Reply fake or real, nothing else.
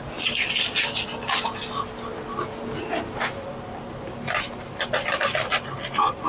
real